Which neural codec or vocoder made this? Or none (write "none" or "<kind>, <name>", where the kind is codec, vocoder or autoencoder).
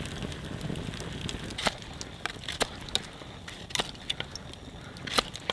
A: none